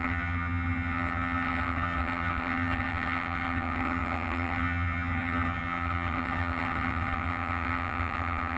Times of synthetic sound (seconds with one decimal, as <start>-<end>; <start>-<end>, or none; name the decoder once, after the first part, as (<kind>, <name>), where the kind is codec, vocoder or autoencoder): 0.0-8.6 (vocoder, HiFi-GAN)